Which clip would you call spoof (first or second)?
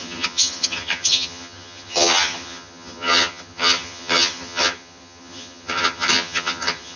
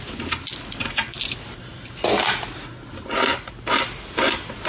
first